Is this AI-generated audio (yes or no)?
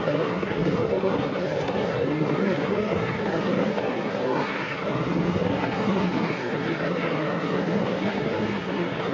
yes